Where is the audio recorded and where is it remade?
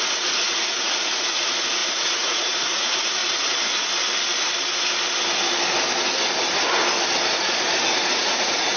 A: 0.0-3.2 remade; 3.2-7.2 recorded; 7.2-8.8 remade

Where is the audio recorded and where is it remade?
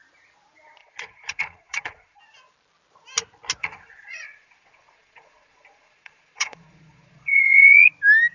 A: 0.0-0.8 recorded; 0.8-2.2 remade; 2.2-3.6 recorded; 3.6-7.9 remade; 7.9-8.3 recorded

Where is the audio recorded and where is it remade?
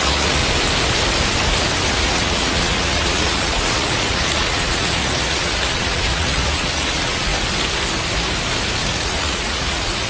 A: 0.0-0.4 remade; 0.4-1.9 recorded; 1.9-7.3 remade; 7.3-8.8 recorded; 8.8-10.1 remade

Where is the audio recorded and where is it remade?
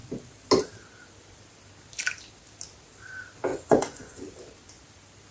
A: 0.0-3.5 recorded; 3.5-4.2 remade; 4.2-5.3 recorded